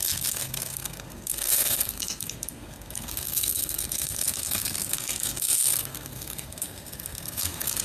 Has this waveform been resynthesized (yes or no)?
yes